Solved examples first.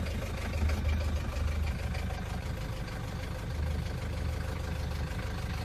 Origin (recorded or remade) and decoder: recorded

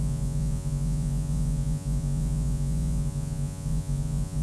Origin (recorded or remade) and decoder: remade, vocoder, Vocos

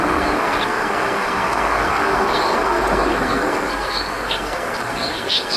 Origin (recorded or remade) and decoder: remade, codec, SNAC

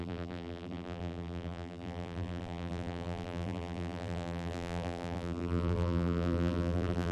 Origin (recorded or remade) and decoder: remade, vocoder, BigVGAN v2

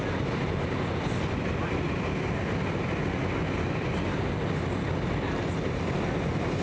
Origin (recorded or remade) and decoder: recorded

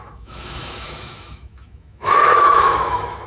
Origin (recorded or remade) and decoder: remade, autoencoder, DAC-VAE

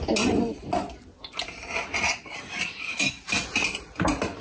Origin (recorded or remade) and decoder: recorded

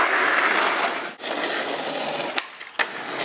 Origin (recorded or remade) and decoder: recorded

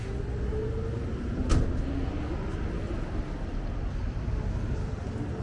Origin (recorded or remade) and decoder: recorded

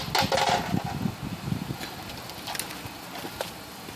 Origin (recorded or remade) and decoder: recorded